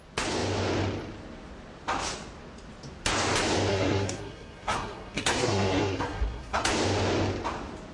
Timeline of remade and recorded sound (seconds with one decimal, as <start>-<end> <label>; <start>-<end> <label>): 0.0-3.7 recorded; 3.7-6.7 remade; 6.7-7.9 recorded